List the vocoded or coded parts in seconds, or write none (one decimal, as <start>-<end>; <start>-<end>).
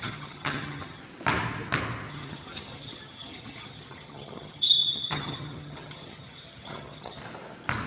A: 0.0-1.0; 2.1-7.2